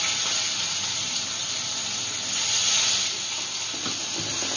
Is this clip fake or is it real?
real